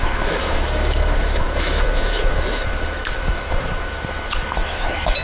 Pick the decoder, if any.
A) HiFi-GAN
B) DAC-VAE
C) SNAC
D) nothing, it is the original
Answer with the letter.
B